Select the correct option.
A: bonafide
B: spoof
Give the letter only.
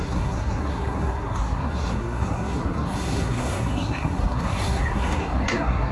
B